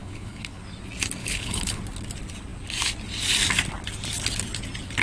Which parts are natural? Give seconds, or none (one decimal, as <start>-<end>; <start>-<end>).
0.6-1.2; 1.8-5.0